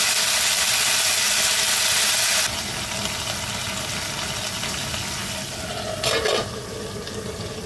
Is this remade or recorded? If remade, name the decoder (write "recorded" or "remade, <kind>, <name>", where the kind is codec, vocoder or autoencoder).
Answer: recorded